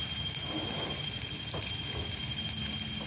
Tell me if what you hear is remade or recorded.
recorded